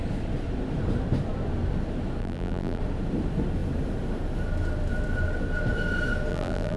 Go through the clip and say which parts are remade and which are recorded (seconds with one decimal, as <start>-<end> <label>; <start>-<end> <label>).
0.0-2.2 recorded; 2.2-2.8 remade; 2.8-6.3 recorded; 6.3-6.8 remade